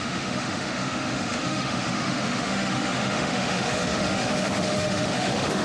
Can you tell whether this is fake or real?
fake